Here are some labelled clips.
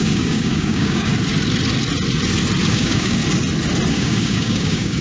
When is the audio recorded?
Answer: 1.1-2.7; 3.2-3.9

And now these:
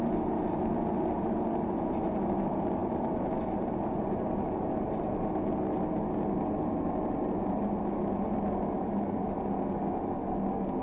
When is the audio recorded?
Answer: 0.0-10.8

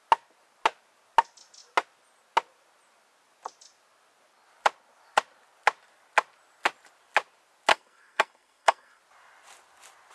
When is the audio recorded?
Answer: 0.0-7.7; 9.0-10.1

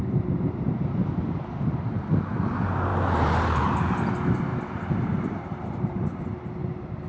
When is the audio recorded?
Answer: 2.3-2.9; 4.1-4.5; 6.2-7.1

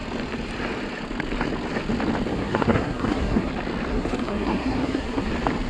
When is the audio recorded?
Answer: 0.0-2.3; 3.5-3.9; 5.3-5.7

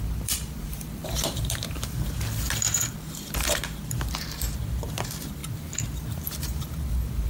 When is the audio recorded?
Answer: none